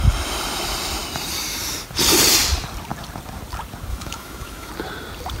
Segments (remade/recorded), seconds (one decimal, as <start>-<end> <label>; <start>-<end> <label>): 0.0-3.9 recorded; 3.9-4.7 remade; 4.7-5.4 recorded